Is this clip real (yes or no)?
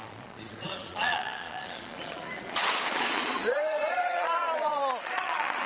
no